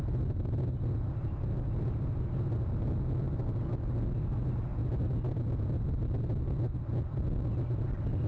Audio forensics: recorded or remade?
recorded